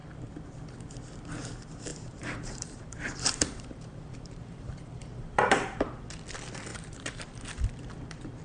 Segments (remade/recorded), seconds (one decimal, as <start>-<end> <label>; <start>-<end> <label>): 0.0-1.9 recorded; 1.9-6.0 remade; 6.0-6.7 recorded; 6.7-7.2 remade; 7.2-8.4 recorded